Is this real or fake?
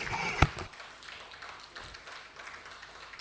real